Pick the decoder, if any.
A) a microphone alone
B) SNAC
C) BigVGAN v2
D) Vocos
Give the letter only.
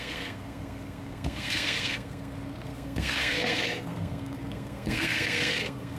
B